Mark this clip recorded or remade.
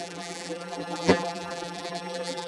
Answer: remade